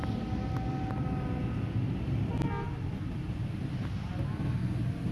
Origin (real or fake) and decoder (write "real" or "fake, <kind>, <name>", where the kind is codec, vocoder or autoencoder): real